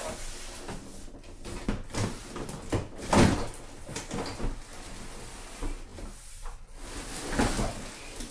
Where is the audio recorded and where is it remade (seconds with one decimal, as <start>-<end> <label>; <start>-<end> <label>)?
0.0-8.3 recorded